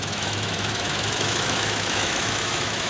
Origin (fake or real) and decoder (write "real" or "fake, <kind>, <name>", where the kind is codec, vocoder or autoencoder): fake, autoencoder, DAC-VAE